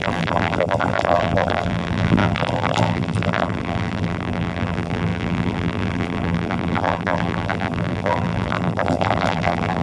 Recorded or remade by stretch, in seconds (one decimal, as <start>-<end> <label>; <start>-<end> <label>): 0.0-9.8 remade